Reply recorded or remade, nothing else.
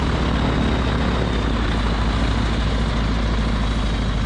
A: recorded